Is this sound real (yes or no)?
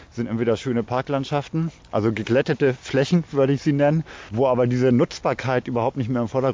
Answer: yes